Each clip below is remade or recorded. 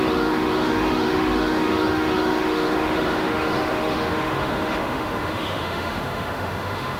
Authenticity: remade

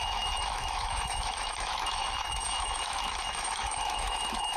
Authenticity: remade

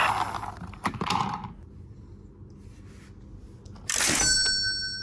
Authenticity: recorded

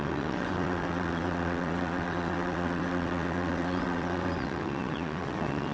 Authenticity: remade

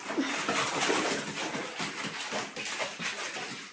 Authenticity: recorded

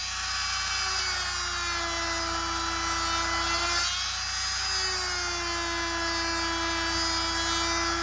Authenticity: recorded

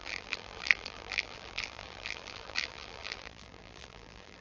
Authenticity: remade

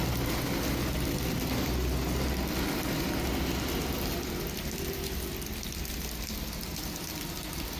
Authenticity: recorded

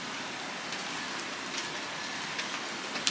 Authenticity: remade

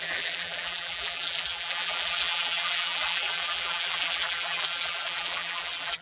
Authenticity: remade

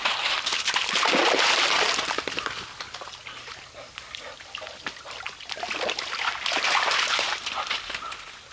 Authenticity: recorded